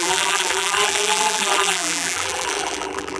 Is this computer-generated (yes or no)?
yes